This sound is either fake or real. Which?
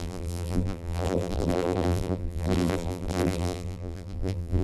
fake